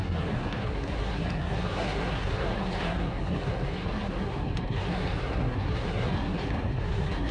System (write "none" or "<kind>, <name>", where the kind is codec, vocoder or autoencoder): codec, SNAC